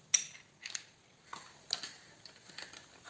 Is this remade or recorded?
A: recorded